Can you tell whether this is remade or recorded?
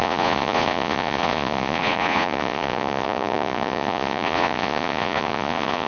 remade